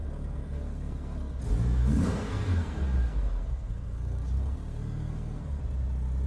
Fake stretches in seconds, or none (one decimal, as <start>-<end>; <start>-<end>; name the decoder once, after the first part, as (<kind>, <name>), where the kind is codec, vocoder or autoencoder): 0.0-1.4 (codec, SNAC); 1.8-5.6